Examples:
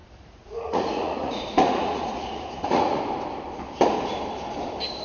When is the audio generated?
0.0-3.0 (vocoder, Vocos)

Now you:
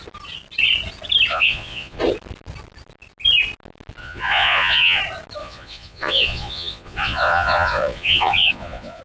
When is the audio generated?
1.3-2.0 (vocoder, Vocos); 4.0-5.0; 5.4-9.0

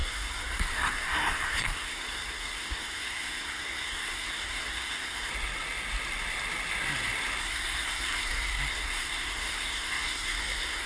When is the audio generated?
0.0-5.3 (codec, SNAC); 7.4-10.9

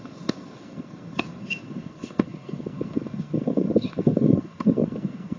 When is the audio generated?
0.0-5.4 (codec, SNAC)